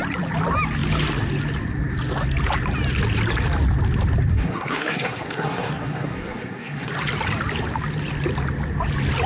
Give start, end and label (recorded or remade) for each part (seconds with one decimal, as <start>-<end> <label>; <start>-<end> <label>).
0.0-4.3 recorded; 4.3-6.9 remade; 6.9-9.3 recorded